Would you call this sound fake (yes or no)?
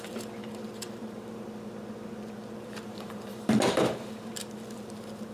yes